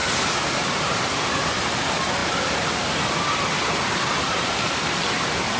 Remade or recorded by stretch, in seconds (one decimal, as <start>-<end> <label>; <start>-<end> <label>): 0.0-1.0 remade; 1.0-5.6 recorded